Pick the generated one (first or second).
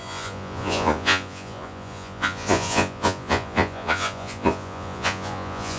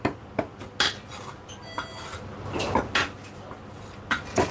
first